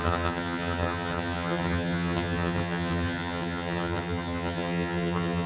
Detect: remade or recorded remade